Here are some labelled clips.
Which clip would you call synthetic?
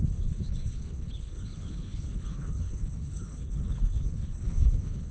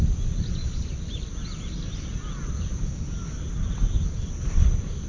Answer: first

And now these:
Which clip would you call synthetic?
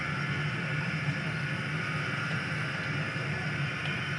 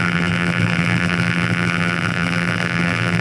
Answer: second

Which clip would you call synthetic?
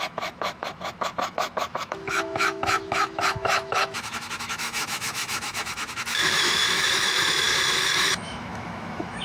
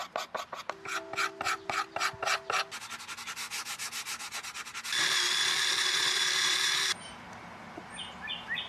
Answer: first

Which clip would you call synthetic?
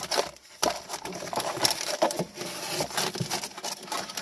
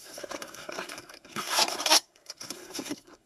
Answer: second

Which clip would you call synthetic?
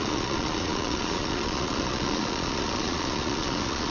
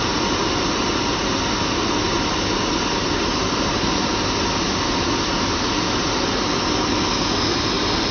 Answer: first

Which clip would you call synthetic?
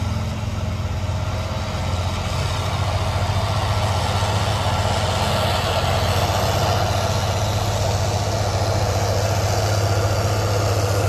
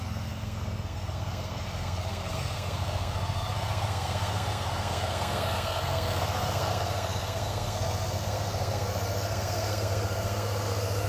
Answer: second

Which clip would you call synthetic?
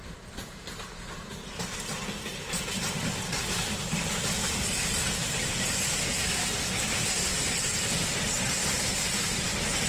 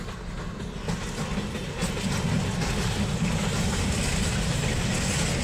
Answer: first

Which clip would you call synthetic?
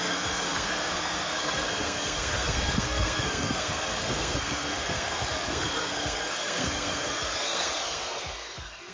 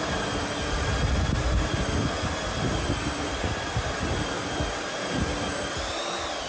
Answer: first